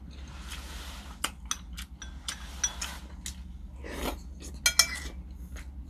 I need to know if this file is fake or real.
real